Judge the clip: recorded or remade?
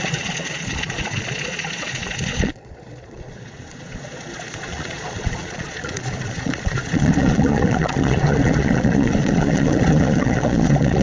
remade